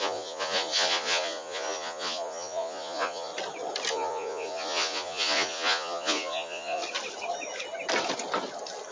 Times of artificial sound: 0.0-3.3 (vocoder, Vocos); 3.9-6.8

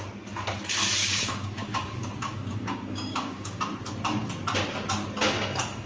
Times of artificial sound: 1.0-3.6 (codec, DAC)